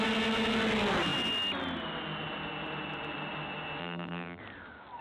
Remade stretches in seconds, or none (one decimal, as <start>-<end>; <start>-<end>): 3.8-4.4